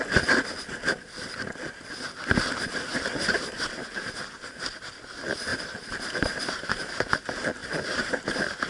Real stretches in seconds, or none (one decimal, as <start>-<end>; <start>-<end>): 0.0-2.9; 4.2-5.5; 7.0-7.6